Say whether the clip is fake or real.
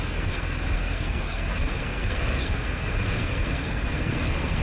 fake